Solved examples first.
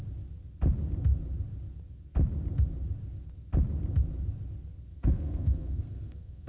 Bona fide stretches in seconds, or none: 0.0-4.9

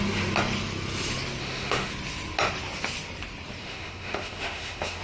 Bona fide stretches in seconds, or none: 0.0-1.4; 1.9-3.6

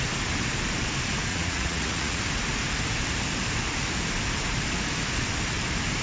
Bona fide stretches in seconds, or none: 0.0-1.3; 2.2-6.0

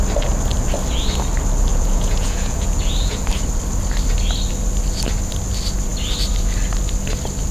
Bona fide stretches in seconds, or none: 0.0-1.7; 3.2-7.5

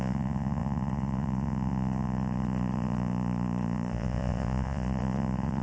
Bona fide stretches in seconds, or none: none